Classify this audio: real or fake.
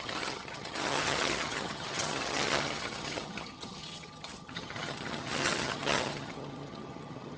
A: fake